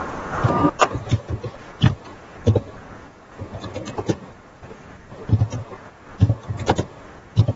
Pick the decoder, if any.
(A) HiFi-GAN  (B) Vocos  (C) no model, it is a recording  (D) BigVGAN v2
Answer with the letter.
B